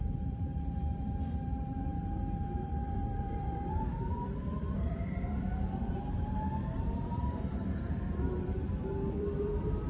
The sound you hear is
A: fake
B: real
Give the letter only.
A